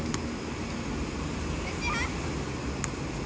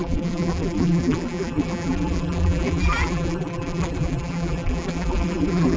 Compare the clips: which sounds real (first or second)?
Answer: first